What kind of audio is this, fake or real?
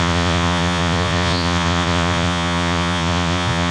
fake